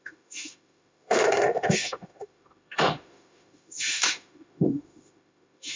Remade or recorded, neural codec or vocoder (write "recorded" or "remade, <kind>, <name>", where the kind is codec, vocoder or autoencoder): remade, autoencoder, DAC-VAE